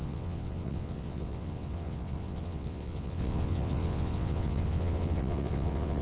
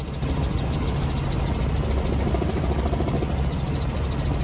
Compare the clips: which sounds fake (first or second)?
first